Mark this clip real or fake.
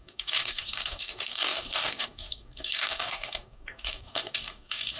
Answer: fake